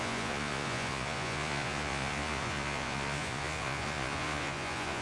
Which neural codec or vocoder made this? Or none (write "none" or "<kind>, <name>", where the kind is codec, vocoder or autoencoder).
vocoder, Vocos